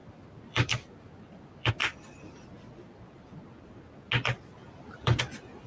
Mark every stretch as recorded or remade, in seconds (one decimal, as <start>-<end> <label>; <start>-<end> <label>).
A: 0.0-1.7 remade; 1.7-4.6 recorded; 4.6-5.2 remade; 5.2-5.7 recorded